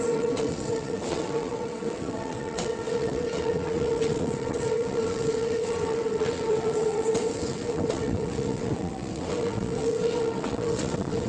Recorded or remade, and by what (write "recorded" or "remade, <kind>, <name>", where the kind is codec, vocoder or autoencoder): remade, vocoder, WaveNeXt